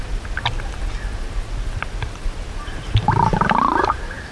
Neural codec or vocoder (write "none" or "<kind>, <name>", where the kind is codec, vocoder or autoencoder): none